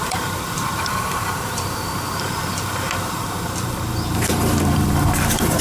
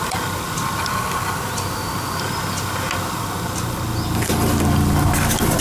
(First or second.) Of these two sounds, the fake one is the first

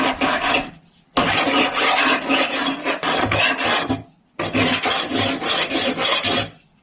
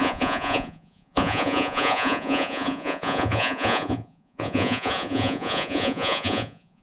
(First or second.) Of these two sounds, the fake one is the second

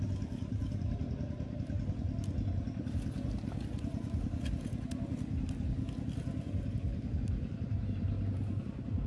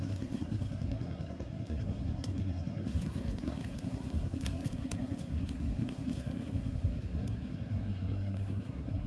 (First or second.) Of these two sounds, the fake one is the second